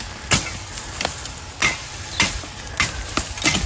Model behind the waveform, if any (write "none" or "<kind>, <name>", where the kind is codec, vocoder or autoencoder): none